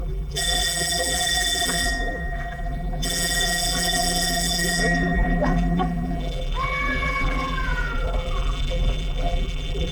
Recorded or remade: remade